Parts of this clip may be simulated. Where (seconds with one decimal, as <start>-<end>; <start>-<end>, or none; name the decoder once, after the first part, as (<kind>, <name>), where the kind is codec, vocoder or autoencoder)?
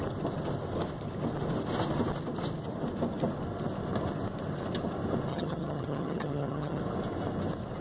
5.3-6.8 (vocoder, HiFi-GAN)